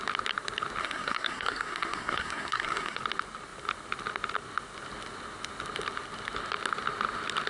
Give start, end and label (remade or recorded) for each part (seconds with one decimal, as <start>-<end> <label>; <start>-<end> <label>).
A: 0.0-0.8 recorded; 0.8-3.0 remade; 3.0-7.5 recorded